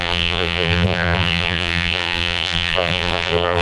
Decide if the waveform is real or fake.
fake